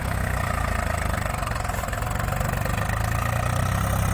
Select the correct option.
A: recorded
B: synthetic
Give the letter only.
A